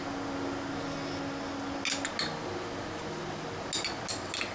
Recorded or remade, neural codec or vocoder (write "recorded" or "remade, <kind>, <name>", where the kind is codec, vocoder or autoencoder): recorded